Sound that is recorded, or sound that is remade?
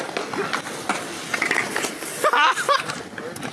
recorded